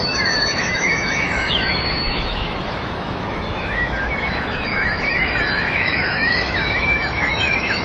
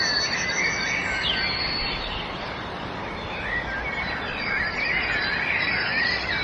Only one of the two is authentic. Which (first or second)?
second